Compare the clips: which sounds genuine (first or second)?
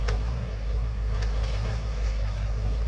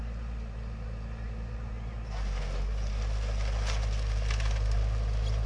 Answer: second